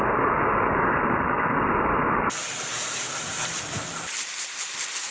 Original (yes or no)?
yes